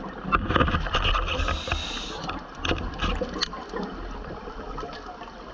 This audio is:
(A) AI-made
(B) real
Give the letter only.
B